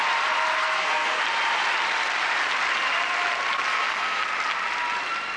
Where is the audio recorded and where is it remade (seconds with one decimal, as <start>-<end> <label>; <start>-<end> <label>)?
0.0-0.5 recorded; 0.5-1.2 remade; 1.2-3.7 recorded; 3.7-4.2 remade; 4.2-5.4 recorded